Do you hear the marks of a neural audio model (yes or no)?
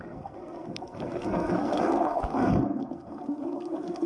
yes